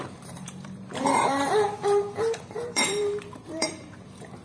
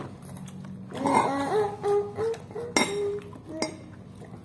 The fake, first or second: first